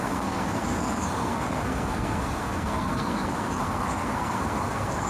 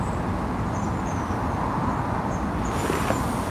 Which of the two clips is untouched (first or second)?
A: second